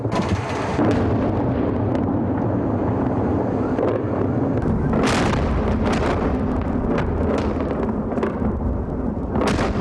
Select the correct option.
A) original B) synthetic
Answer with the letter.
A